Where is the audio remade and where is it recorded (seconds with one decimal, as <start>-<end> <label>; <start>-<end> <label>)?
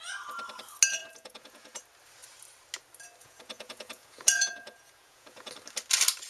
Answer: 0.0-1.0 recorded; 1.0-1.8 remade; 1.8-3.2 recorded; 3.2-5.5 remade; 5.5-6.3 recorded